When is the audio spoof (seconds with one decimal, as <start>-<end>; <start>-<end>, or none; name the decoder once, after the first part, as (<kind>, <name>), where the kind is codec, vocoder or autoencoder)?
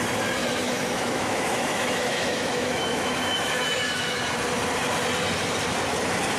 0.4-4.2 (autoencoder, DAC-VAE)